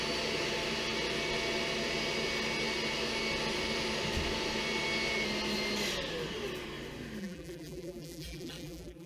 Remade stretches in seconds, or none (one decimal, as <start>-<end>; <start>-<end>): 7.2-9.1